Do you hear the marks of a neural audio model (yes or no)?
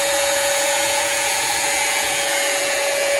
yes